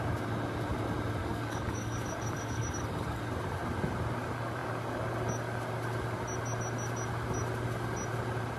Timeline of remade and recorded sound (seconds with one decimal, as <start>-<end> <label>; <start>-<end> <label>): 0.0-1.2 recorded; 1.2-3.2 remade; 3.2-8.6 recorded